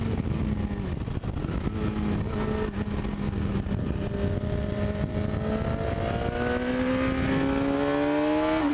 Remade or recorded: recorded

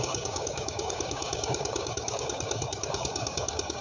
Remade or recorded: remade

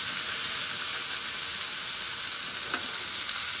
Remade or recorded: recorded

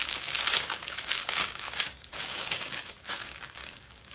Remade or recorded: remade